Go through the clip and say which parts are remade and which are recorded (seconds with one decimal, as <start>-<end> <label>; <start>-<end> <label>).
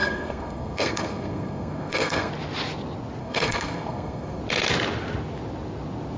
0.0-2.3 remade; 2.3-3.2 recorded; 3.2-4.4 remade; 4.4-6.2 recorded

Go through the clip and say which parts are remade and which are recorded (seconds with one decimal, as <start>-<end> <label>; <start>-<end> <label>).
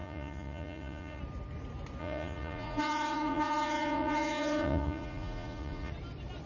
0.0-1.2 remade; 1.2-2.0 recorded; 2.0-5.9 remade; 5.9-6.5 recorded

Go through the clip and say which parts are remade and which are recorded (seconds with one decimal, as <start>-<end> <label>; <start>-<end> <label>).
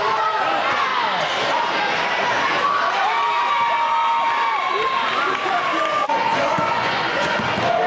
0.0-6.0 recorded; 6.0-7.5 remade; 7.5-7.9 recorded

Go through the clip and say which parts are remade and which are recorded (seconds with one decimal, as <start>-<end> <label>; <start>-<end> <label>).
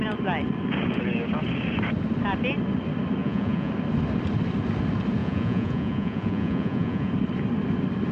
0.0-3.2 recorded; 3.2-3.7 remade; 3.7-5.2 recorded; 5.2-7.1 remade; 7.1-8.1 recorded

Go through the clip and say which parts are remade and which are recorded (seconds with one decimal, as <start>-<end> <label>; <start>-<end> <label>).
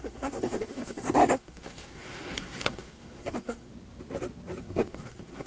0.0-3.7 remade; 3.7-4.6 recorded; 4.6-5.5 remade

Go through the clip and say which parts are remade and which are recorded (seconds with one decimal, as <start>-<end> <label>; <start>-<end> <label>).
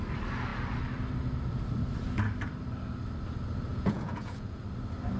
0.0-3.7 recorded; 3.7-4.6 remade; 4.6-5.2 recorded